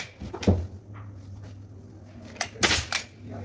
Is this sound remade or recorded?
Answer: recorded